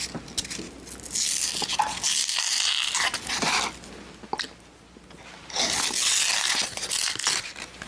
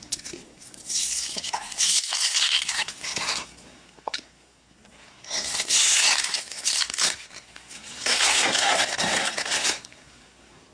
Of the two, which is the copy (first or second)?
second